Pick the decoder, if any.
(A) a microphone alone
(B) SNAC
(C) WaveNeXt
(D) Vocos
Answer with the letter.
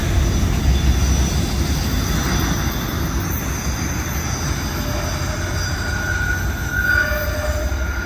A